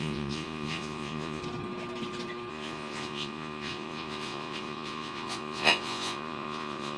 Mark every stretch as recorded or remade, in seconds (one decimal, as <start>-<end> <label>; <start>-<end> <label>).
0.0-1.4 remade; 1.4-2.5 recorded; 2.5-7.0 remade